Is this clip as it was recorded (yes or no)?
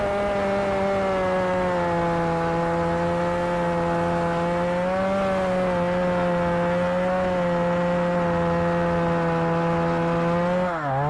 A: yes